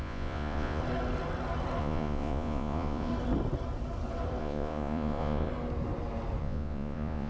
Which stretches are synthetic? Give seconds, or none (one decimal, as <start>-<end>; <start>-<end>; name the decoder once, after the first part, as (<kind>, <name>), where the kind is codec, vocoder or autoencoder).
0.0-0.8 (vocoder, Vocos); 1.8-3.1; 4.4-5.5; 6.4-7.3